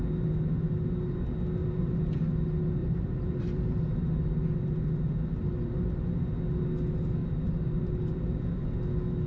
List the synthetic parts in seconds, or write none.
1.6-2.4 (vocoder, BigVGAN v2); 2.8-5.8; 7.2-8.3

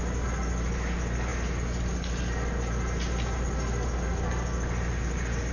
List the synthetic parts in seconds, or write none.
none

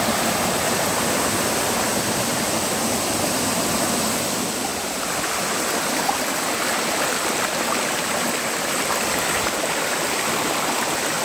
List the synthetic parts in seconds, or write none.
none

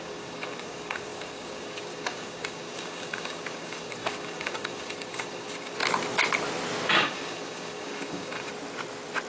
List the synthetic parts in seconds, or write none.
0.0-5.8 (codec, DAC); 6.9-8.5